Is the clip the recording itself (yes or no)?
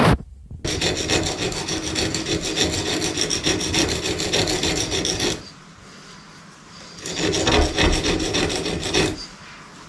yes